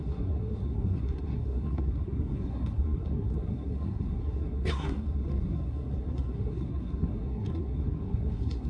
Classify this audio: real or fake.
fake